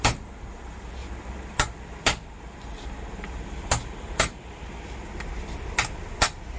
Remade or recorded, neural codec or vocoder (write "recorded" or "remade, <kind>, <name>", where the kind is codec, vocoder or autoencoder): recorded